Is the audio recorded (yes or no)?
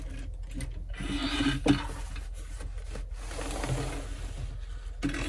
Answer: yes